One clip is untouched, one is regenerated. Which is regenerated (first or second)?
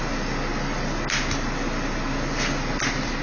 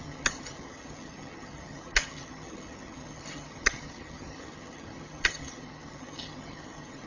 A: second